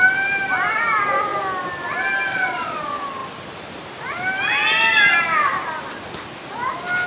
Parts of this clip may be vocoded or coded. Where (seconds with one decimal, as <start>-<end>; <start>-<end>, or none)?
2.3-2.8